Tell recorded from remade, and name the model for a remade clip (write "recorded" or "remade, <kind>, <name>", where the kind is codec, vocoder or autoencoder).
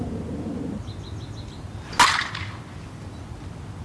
recorded